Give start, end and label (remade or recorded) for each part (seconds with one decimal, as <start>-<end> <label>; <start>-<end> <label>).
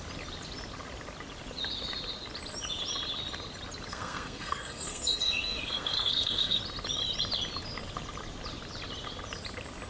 0.0-3.9 recorded; 3.9-6.6 remade; 6.6-9.9 recorded